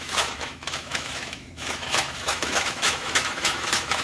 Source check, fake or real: fake